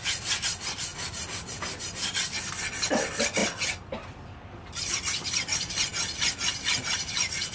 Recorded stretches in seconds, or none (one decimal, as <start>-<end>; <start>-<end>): 0.9-2.9; 5.9-7.5